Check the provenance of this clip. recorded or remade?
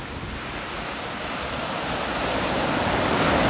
recorded